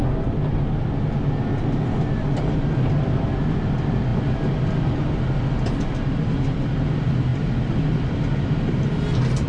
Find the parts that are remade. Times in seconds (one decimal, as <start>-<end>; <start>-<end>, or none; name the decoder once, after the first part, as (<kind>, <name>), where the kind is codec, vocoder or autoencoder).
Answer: none